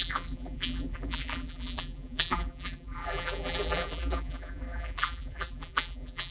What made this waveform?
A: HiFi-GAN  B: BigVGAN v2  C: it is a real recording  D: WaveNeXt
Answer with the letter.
B